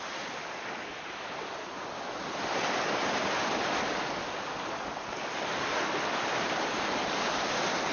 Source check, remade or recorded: recorded